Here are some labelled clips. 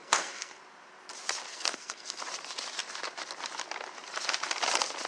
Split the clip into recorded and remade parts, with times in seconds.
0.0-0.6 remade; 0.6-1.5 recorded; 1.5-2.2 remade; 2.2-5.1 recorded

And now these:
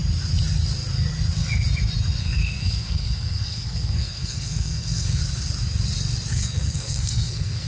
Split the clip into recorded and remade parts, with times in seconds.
0.0-2.2 recorded; 2.2-5.2 remade; 5.2-6.3 recorded; 6.3-7.7 remade

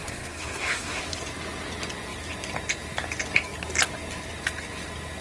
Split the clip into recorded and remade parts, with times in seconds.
0.0-1.0 remade; 1.0-5.2 recorded